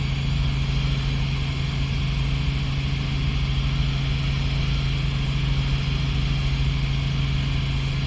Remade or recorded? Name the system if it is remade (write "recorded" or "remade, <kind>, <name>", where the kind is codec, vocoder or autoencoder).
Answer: recorded